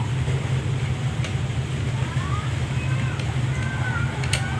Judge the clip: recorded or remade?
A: recorded